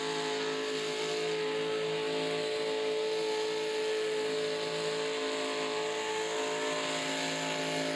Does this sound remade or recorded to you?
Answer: recorded